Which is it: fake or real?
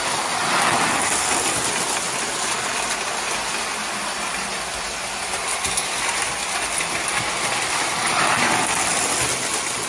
real